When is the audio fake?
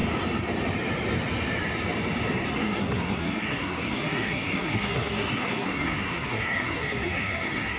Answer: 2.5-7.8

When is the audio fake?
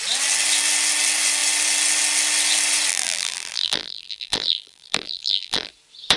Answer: 2.9-5.7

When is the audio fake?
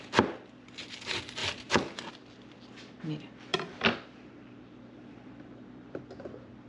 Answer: 1.4-2.1; 3.5-6.0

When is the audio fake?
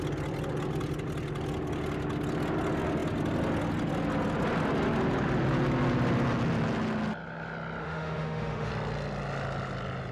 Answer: 7.8-8.7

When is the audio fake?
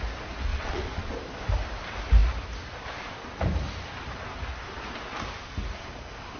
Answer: 0.5-1.1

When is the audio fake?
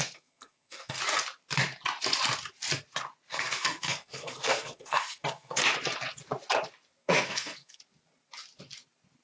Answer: 0.0-1.0; 3.3-5.6; 7.0-7.8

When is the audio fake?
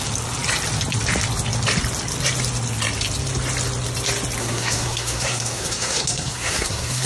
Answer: 4.4-7.1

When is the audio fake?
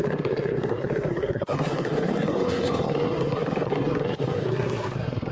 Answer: 0.0-5.3